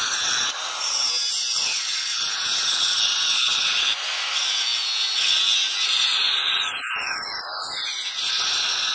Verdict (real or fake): real